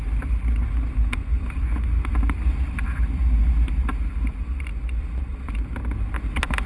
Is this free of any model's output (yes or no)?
yes